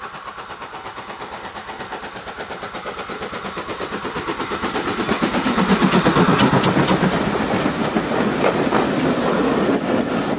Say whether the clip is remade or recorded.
recorded